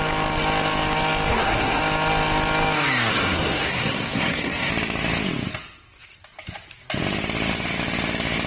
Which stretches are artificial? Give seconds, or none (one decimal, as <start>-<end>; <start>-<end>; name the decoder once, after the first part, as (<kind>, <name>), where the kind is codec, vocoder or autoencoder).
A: 1.3-1.8 (codec, SNAC); 3.1-4.7